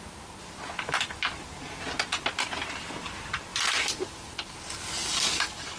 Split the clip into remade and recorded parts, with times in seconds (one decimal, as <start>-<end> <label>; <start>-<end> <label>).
0.0-3.5 recorded; 3.5-4.3 remade; 4.3-5.8 recorded